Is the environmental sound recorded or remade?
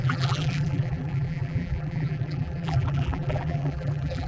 remade